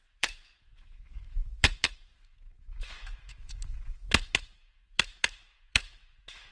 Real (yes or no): no